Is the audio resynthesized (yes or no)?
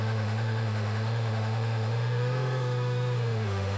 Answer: yes